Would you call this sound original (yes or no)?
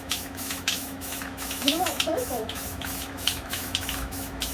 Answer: no